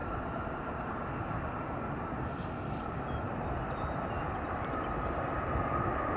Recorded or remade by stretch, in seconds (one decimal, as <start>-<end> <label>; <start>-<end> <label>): 0.0-2.6 recorded; 2.6-6.2 remade